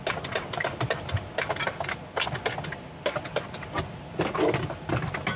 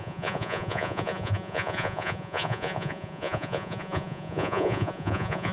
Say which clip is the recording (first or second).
first